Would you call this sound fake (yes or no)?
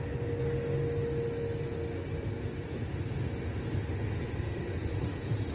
no